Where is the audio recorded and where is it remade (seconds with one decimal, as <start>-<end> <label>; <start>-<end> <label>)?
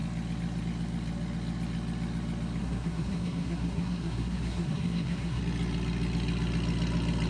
0.0-2.6 recorded; 2.6-5.4 remade; 5.4-7.3 recorded